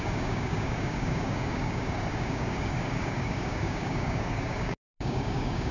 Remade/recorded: remade